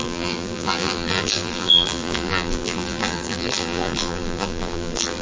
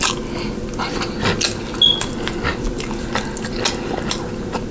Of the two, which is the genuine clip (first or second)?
second